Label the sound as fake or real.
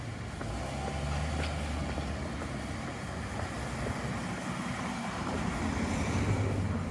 real